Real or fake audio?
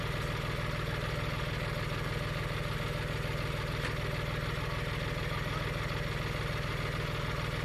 real